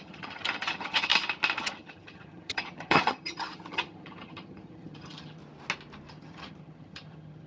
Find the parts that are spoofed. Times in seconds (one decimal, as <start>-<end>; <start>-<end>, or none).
0.0-1.1; 1.6-5.4; 6.1-7.5